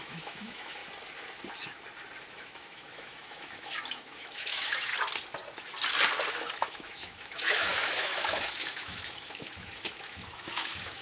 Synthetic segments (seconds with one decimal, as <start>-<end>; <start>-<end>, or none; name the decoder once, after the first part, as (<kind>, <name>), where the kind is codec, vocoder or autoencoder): 0.0-0.8 (autoencoder, DAC-VAE); 2.3-4.9; 6.3-11.0